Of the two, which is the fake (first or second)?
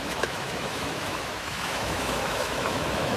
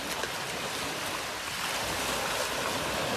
first